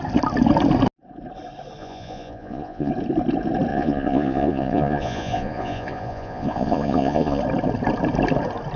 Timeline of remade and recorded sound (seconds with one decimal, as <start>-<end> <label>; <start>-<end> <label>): 0.0-1.8 recorded; 1.8-2.9 remade; 2.9-3.7 recorded; 3.7-7.4 remade; 7.4-8.8 recorded